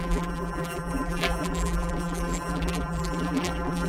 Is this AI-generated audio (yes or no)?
yes